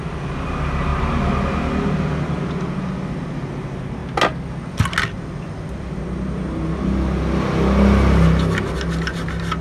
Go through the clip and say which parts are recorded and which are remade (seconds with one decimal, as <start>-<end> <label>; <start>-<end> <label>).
0.0-9.6 recorded